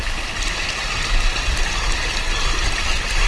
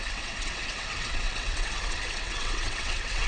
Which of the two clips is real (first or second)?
first